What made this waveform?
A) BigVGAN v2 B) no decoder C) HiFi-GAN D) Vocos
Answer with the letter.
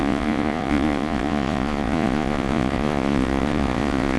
D